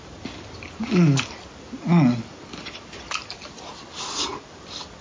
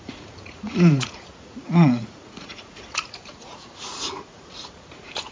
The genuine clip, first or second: first